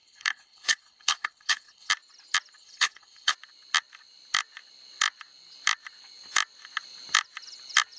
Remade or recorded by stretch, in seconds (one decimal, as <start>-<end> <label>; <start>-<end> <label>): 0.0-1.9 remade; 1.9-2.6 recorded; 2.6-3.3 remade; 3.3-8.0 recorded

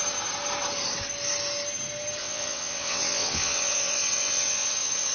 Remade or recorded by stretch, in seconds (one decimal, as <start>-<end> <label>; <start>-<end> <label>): 0.0-2.2 recorded; 2.2-5.1 remade

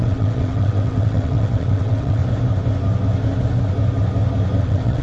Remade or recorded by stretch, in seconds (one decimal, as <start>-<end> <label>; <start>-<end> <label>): 0.0-2.2 remade; 2.2-4.6 recorded; 4.6-5.0 remade

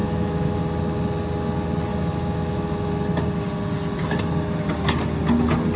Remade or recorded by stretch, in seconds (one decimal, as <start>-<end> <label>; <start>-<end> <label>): 0.0-0.6 remade; 0.6-1.9 recorded; 1.9-2.9 remade; 2.9-5.8 recorded

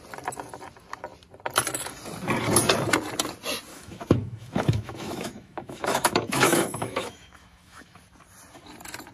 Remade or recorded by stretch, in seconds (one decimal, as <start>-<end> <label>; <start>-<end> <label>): 0.0-3.7 recorded; 3.7-8.0 remade; 8.0-9.1 recorded